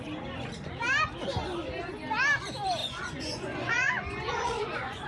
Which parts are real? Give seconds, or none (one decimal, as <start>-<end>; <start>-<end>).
0.0-2.8

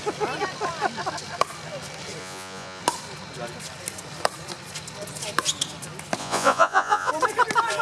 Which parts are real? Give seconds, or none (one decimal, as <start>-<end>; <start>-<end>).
0.0-2.2; 2.8-6.2; 7.1-7.8